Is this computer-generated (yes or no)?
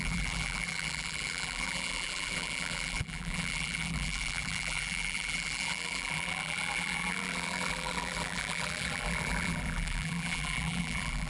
yes